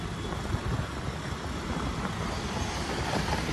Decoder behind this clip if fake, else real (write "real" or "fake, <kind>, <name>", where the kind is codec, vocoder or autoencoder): real